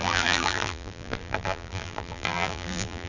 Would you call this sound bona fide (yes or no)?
no